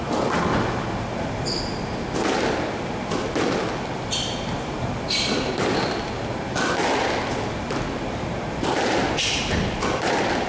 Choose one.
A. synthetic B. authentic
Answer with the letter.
B